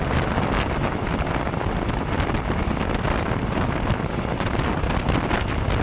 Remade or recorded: recorded